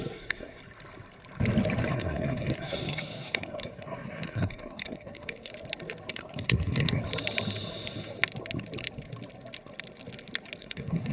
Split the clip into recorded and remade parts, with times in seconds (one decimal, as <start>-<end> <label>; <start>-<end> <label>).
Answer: 0.0-0.6 remade; 0.6-1.9 recorded; 1.9-5.5 remade; 5.5-6.1 recorded; 6.1-7.0 remade; 7.0-10.6 recorded; 10.6-11.1 remade